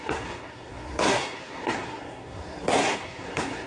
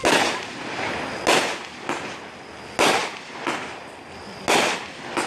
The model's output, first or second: first